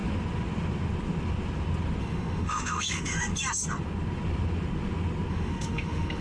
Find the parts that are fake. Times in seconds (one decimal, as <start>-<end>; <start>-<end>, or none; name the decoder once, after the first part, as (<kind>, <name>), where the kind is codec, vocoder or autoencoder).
2.0-3.3 (autoencoder, DAC-VAE); 5.3-6.2